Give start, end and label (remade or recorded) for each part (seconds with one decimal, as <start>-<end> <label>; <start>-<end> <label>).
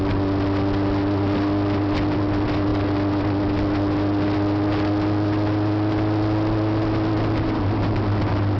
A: 0.0-8.6 recorded